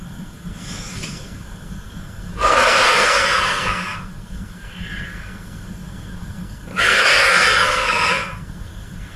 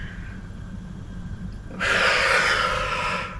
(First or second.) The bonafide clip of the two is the second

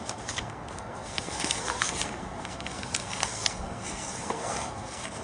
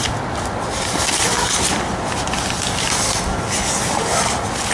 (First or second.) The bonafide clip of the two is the second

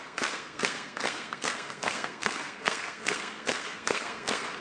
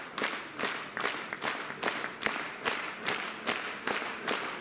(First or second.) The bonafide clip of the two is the second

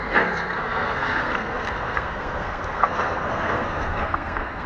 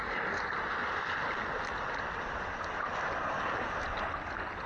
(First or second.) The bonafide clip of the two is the second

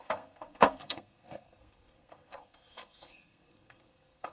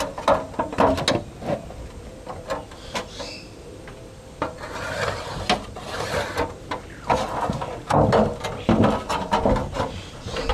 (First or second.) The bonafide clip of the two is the second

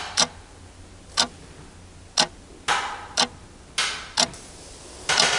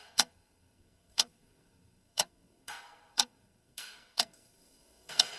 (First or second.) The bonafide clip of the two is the first